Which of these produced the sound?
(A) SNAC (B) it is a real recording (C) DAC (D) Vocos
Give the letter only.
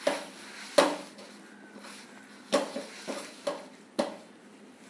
B